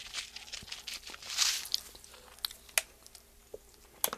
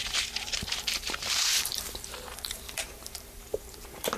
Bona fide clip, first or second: first